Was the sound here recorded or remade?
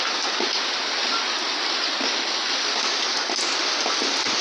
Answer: recorded